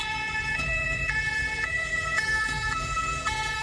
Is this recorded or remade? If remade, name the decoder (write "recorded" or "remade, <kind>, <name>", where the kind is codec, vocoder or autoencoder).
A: remade, vocoder, BigVGAN v2